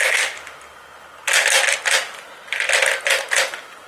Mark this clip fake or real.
real